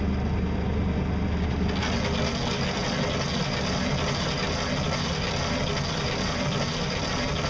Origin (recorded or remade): recorded